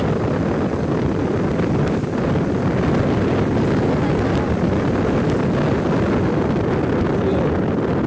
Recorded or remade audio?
recorded